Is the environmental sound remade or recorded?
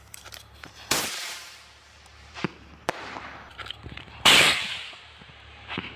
remade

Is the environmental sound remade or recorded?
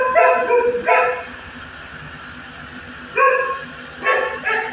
recorded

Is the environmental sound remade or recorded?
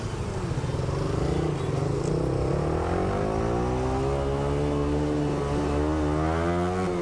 recorded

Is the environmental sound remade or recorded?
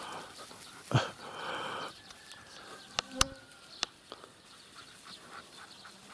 recorded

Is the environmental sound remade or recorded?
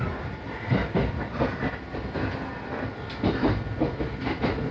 recorded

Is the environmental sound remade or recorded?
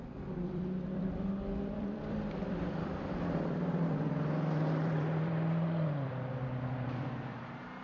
remade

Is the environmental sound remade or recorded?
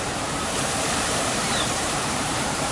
remade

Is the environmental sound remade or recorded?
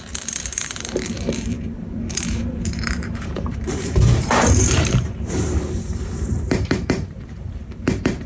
remade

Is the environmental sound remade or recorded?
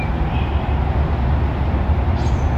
recorded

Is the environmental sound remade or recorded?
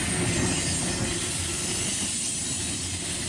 recorded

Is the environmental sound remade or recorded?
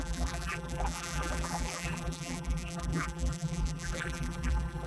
remade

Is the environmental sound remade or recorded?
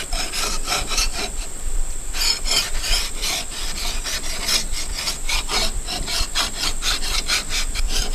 remade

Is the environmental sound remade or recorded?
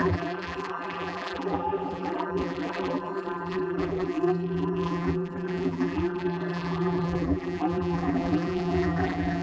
remade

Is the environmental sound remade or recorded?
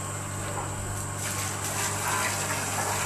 recorded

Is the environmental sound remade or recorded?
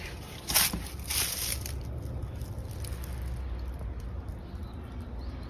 recorded